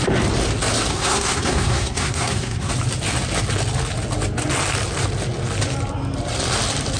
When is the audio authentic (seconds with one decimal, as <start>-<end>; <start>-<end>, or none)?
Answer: 0.0-0.9; 2.7-7.0